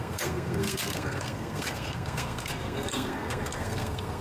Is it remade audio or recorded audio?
remade